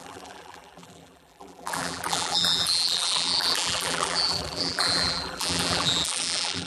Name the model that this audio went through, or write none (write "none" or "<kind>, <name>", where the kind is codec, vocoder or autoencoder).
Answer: vocoder, BigVGAN v2